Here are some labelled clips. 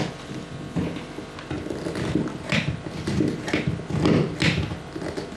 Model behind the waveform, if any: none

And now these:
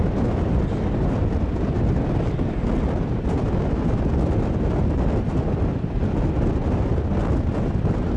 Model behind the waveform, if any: none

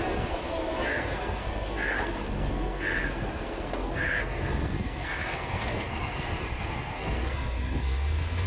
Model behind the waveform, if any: codec, SNAC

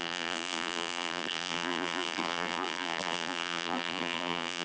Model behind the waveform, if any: vocoder, BigVGAN v2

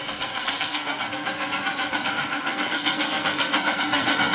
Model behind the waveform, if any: codec, SNAC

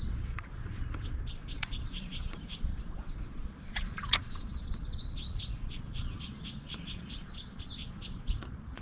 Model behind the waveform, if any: vocoder, Vocos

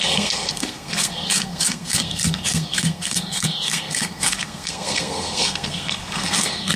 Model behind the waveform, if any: codec, SNAC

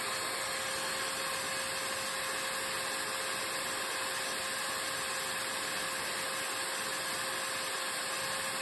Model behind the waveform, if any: none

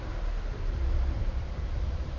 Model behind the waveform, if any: vocoder, BigVGAN v2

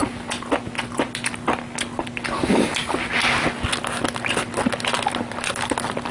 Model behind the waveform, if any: none